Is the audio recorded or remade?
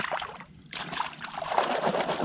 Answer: recorded